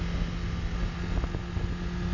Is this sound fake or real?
real